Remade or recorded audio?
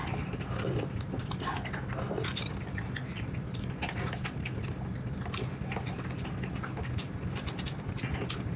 recorded